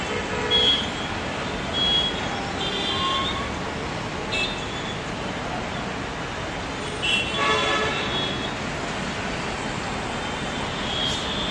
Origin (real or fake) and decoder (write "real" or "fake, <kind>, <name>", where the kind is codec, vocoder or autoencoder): real